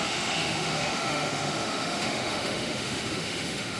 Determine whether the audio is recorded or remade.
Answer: remade